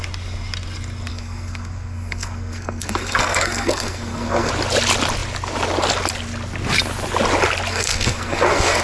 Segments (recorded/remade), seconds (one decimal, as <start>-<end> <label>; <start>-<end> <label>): 0.0-1.1 recorded; 1.1-4.5 remade; 4.5-7.7 recorded; 7.7-8.8 remade